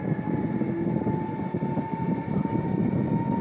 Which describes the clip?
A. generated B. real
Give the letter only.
B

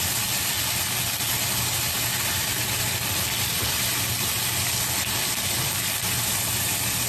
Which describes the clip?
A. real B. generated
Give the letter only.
A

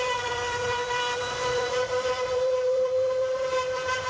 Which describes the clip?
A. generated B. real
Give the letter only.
A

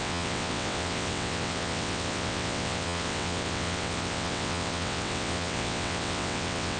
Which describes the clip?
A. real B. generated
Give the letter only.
B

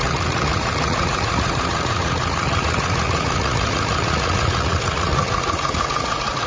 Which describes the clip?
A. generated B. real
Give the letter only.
A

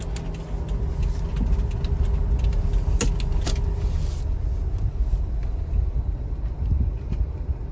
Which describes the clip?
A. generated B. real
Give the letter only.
B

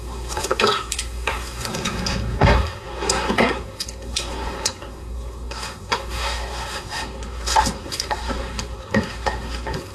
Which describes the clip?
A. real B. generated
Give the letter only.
B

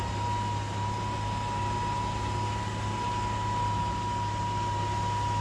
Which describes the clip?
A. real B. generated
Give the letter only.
A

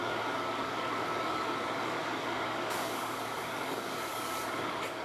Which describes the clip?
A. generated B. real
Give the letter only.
A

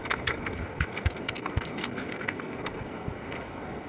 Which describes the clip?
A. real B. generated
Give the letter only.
B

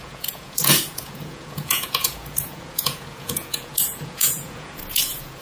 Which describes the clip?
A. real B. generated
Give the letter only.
B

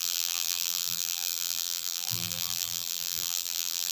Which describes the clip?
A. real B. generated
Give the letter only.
B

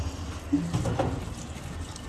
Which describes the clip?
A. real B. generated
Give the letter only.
A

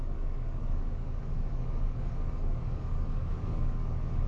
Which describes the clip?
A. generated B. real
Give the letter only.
A